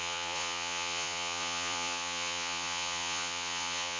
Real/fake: fake